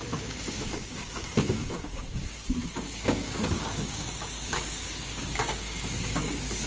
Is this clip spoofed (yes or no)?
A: yes